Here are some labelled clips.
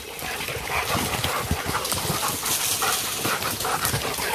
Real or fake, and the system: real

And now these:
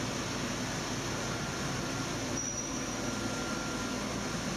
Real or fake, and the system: real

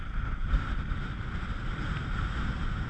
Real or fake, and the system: real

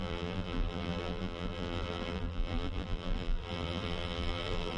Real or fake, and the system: fake, vocoder, BigVGAN v2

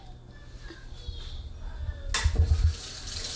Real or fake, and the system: real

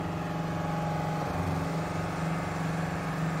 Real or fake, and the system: real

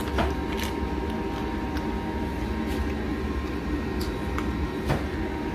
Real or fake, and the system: real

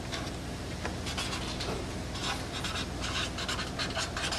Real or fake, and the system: real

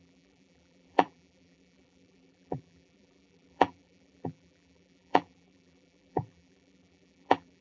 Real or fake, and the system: fake, vocoder, BigVGAN v2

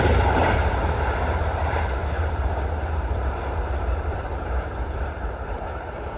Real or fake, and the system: fake, vocoder, BigVGAN v2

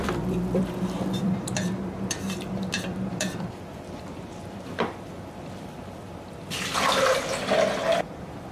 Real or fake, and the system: fake, vocoder, BigVGAN v2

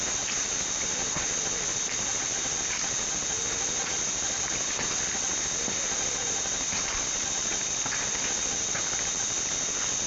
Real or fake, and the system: fake, vocoder, BigVGAN v2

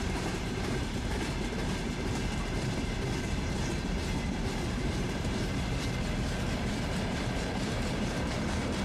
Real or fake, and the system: fake, vocoder, BigVGAN v2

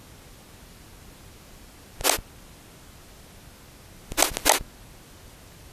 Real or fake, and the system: real